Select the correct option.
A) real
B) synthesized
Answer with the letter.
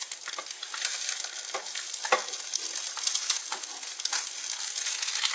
A